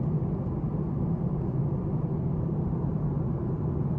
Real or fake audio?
real